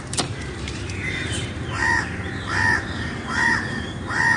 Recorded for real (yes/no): no